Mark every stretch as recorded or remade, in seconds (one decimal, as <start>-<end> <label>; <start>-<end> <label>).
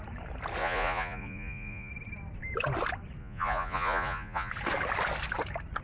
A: 0.0-0.6 recorded; 0.6-1.9 remade; 1.9-3.2 recorded; 3.2-4.5 remade; 4.5-5.8 recorded